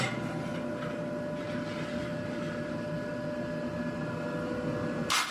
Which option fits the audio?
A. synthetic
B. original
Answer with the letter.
B